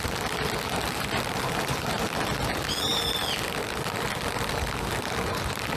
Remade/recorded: recorded